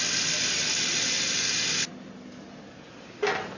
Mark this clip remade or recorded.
recorded